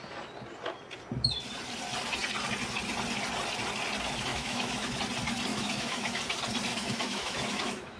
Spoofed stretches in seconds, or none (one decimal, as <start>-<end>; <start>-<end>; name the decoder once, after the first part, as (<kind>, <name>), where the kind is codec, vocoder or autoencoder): 4.3-5.0 (autoencoder, DAC-VAE); 5.5-6.2; 6.7-8.0